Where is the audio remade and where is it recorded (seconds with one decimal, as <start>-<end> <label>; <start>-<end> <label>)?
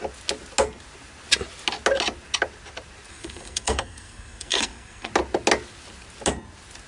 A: 0.0-3.1 recorded; 3.1-5.1 remade; 5.1-6.9 recorded